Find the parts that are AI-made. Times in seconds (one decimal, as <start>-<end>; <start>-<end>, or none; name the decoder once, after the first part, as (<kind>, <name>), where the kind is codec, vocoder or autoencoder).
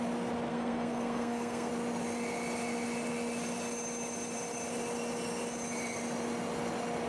0.5-1.7 (codec, SNAC)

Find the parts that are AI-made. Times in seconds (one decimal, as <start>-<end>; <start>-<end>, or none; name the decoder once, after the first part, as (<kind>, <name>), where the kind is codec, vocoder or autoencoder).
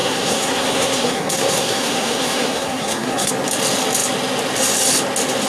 0.0-3.3 (codec, SNAC)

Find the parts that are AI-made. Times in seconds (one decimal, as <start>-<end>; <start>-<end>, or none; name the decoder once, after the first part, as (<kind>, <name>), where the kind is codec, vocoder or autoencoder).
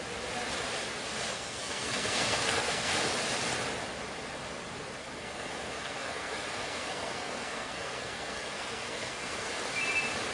1.3-2.9 (codec, SNAC); 5.0-9.5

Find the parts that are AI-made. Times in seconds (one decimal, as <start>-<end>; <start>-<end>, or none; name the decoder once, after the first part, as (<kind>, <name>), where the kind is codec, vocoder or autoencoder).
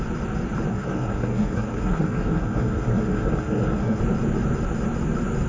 0.7-4.0 (codec, SNAC)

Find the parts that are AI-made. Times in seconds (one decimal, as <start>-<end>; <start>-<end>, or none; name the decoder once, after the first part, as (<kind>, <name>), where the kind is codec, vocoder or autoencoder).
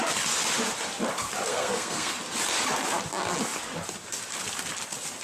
1.5-2.2 (codec, SNAC)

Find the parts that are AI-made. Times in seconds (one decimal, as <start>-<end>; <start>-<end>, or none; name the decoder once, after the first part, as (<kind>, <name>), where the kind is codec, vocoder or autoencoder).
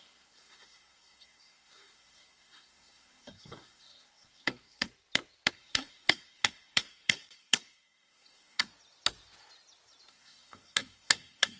0.0-4.9 (codec, SNAC); 5.5-8.7; 10.1-11.6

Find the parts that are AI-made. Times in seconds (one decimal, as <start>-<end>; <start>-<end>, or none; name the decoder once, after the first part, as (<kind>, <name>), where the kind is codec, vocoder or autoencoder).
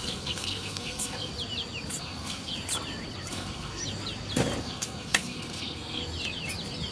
0.0-1.3 (codec, SNAC); 2.0-2.5; 3.3-3.8; 4.6-6.0